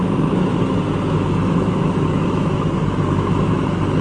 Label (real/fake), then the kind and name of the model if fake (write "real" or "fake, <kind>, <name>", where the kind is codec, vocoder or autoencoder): fake, autoencoder, DAC-VAE